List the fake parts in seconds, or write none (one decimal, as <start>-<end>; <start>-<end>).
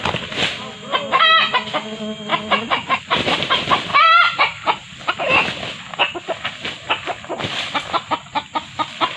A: 2.3-3.5; 3.9-5.1